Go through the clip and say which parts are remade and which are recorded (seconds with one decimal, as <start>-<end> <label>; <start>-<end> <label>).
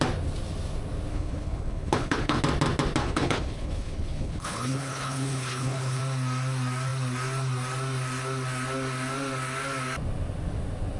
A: 0.0-1.1 recorded; 1.1-2.4 remade; 2.4-3.0 recorded; 3.0-6.0 remade; 6.0-11.0 recorded